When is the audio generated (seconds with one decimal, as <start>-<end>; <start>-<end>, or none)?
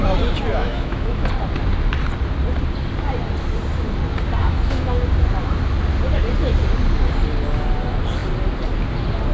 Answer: 0.5-1.3; 4.4-5.0